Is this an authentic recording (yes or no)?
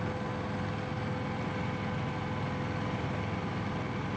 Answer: yes